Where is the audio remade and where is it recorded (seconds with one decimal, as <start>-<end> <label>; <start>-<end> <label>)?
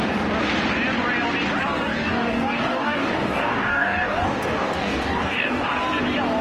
0.0-1.9 recorded; 1.9-5.7 remade; 5.7-6.4 recorded